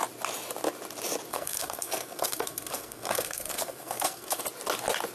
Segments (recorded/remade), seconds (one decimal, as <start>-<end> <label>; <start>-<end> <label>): 0.0-1.3 recorded; 1.3-4.4 remade; 4.4-5.1 recorded